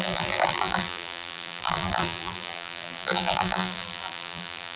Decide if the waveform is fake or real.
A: fake